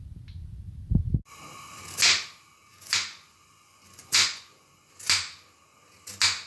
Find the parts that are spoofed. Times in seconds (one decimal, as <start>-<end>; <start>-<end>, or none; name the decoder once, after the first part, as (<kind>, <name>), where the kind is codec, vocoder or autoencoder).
2.7-4.9 (vocoder, Vocos)